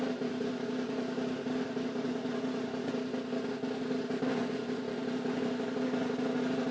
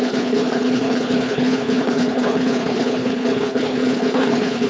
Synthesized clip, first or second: second